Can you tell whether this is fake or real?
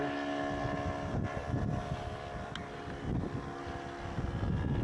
real